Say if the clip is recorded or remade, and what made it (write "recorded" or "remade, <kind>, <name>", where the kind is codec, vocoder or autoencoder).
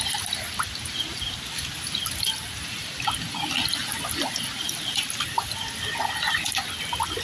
recorded